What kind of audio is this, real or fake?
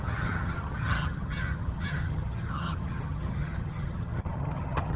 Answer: fake